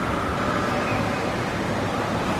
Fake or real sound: real